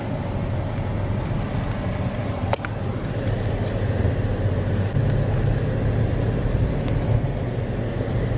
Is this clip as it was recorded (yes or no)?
yes